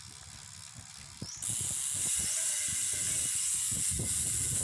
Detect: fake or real real